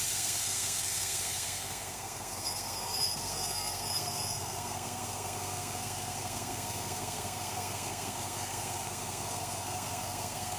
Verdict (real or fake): fake